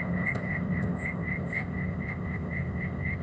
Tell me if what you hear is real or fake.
fake